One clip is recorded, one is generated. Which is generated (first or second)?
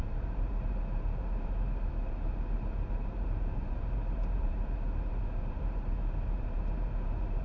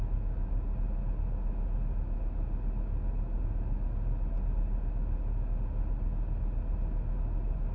first